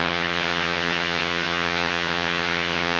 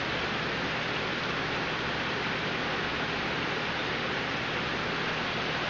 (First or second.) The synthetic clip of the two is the first